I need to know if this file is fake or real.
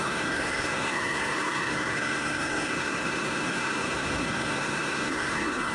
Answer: fake